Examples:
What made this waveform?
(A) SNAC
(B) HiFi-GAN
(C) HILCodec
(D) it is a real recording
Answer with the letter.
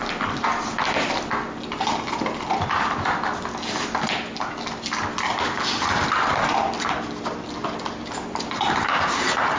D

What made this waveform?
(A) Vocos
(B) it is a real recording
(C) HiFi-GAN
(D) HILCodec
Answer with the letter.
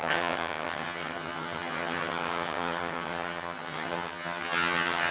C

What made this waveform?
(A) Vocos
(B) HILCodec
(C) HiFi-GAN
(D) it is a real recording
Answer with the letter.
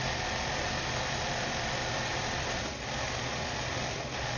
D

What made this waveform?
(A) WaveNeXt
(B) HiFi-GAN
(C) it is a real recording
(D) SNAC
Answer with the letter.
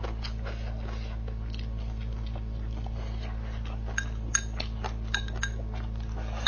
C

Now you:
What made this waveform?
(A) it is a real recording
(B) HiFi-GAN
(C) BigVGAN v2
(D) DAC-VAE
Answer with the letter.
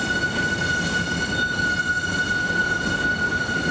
A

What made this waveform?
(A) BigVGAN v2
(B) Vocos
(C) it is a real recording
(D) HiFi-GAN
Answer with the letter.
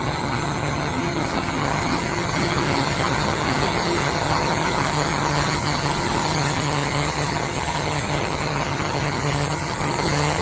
D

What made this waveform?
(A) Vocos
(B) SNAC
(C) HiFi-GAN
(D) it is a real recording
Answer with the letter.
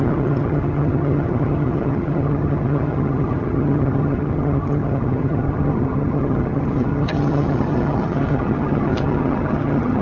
C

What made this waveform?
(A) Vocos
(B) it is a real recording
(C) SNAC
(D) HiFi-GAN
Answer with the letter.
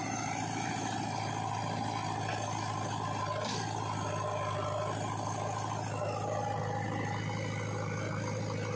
B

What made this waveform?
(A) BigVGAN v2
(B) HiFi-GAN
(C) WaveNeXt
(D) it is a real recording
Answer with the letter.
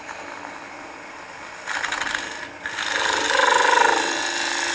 D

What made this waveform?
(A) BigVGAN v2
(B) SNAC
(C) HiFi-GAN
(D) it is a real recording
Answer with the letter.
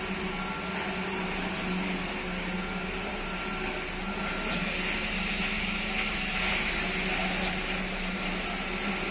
D